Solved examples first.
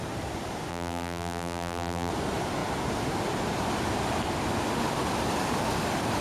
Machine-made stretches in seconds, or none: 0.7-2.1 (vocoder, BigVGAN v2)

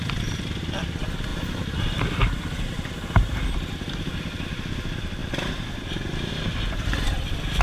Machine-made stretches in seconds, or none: 1.3-2.2 (vocoder, BigVGAN v2); 3.3-3.8

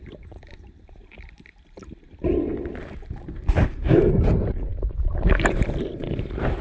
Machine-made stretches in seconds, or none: 0.0-6.6 (vocoder, BigVGAN v2)

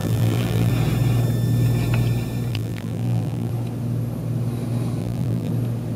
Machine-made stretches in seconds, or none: 0.0-0.7 (vocoder, BigVGAN v2); 2.5-3.5; 5.0-5.5

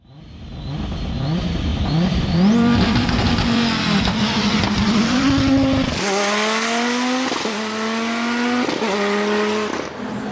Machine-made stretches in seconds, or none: 1.7-3.6 (vocoder, BigVGAN v2)